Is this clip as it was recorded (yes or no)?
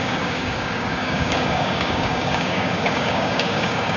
no